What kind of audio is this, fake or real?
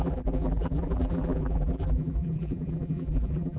fake